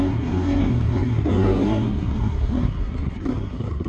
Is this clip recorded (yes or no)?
no